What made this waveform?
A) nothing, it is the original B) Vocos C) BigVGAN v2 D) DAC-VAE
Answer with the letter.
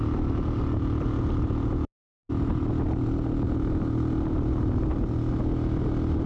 A